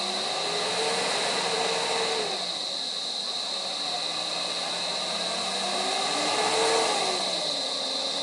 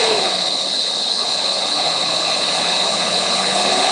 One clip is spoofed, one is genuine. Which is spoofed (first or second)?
second